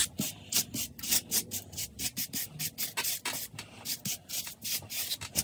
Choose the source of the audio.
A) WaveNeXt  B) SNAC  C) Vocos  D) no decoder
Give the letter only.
D